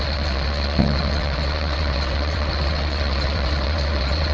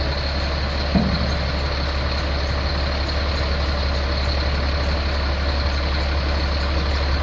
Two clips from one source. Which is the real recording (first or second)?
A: second